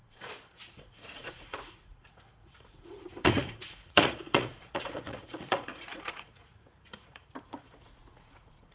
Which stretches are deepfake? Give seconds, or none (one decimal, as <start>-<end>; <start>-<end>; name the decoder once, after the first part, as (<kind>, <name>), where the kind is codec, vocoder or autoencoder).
0.0-8.7 (vocoder, Vocos)